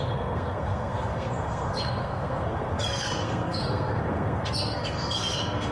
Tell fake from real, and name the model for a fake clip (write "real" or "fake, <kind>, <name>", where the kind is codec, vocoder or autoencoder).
fake, codec, SNAC